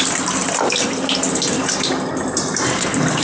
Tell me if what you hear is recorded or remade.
remade